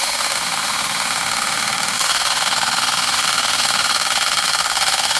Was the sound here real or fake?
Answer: fake